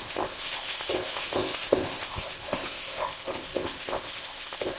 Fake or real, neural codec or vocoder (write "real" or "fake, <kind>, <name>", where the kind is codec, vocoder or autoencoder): fake, codec, ZipCodec